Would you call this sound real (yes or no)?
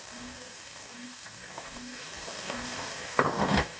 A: no